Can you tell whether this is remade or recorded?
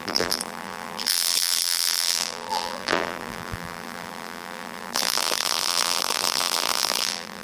remade